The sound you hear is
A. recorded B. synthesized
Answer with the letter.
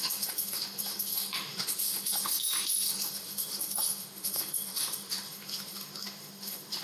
B